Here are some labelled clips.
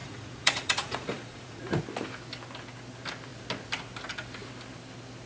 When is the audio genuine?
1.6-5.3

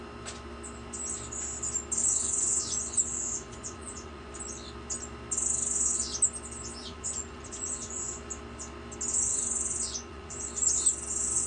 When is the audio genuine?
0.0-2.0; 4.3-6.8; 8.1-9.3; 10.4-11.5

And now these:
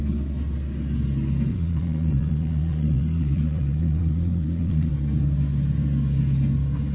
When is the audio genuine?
0.0-1.5; 4.9-6.9

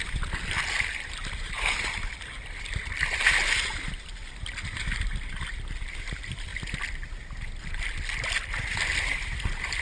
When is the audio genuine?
0.0-9.8

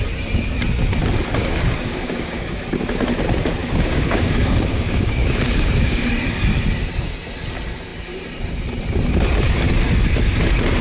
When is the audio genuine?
0.0-1.4; 2.6-3.6; 6.1-10.8